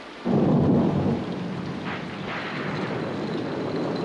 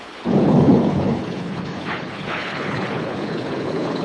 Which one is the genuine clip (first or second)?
first